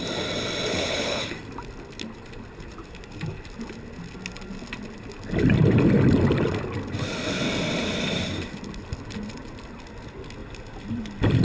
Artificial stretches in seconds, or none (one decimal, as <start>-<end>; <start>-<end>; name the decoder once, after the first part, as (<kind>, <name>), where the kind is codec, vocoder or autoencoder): 0.7-1.3 (codec, HILCodec)